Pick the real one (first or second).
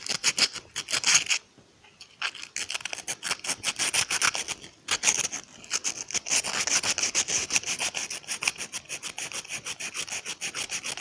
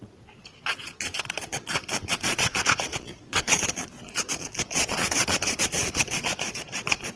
first